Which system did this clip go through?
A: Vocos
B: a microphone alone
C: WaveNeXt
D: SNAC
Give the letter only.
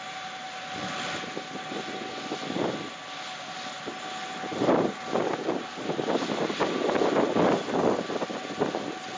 B